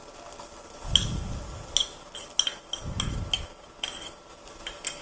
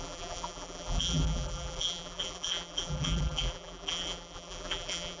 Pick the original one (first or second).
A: first